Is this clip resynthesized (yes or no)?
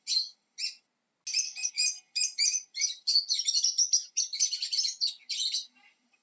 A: no